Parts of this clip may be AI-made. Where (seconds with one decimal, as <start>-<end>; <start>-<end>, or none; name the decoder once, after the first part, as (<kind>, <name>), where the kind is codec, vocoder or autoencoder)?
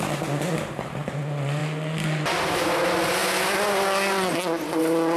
none